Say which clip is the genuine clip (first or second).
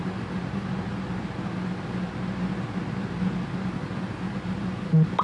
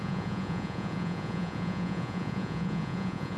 first